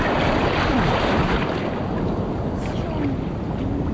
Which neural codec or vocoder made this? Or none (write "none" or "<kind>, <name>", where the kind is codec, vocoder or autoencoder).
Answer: none